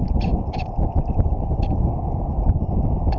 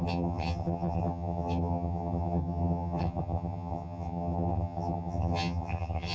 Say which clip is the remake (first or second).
second